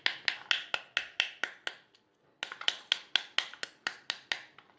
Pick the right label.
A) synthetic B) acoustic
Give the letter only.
B